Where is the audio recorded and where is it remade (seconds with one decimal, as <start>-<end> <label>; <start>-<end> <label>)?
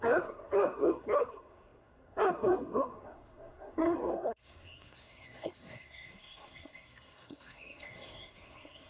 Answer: 0.0-8.9 remade